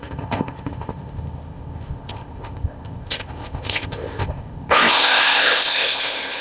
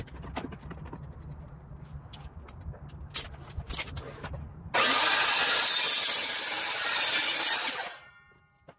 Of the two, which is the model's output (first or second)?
first